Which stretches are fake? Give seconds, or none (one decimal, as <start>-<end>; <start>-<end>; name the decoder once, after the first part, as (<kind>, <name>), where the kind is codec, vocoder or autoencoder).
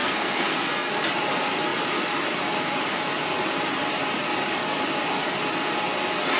0.0-0.9 (codec, SNAC)